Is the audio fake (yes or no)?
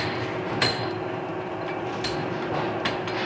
no